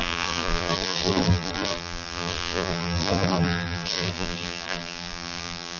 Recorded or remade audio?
remade